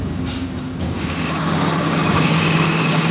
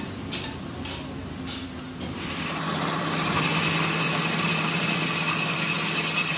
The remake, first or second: first